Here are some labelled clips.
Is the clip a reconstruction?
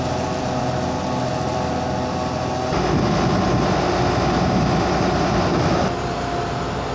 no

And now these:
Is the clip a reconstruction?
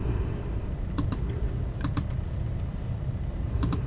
yes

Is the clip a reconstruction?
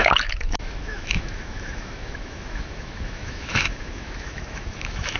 yes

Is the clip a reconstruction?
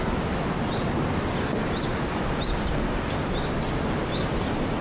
no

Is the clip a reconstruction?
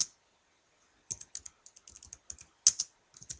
no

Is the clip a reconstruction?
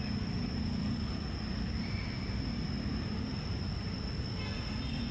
no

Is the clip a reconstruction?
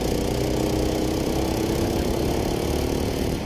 yes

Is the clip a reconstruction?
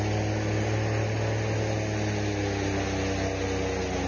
no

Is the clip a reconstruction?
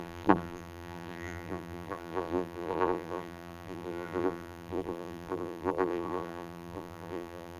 yes